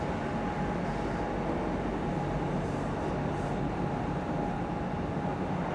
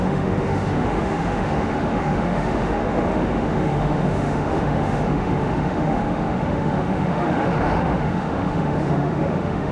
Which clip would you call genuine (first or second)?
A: first